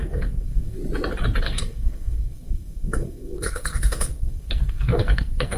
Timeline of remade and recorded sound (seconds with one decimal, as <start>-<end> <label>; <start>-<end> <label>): 0.0-0.8 remade; 0.8-1.4 recorded; 1.4-5.6 remade